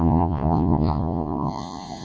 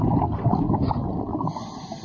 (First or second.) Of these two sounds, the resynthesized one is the first